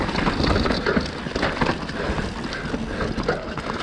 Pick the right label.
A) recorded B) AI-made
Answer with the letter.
A